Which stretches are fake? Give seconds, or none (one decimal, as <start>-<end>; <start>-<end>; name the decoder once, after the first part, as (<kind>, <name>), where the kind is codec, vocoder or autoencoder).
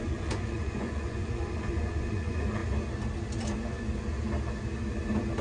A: 0.0-2.6 (vocoder, Vocos)